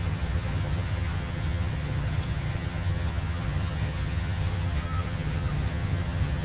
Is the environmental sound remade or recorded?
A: remade